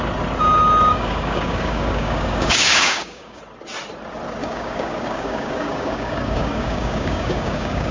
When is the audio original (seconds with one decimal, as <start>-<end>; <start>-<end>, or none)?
0.0-0.9; 3.4-4.4